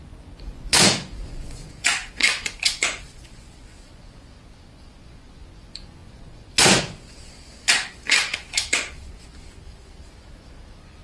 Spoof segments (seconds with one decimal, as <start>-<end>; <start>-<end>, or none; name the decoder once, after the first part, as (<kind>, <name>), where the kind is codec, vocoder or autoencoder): 0.0-11.0 (vocoder, Vocos)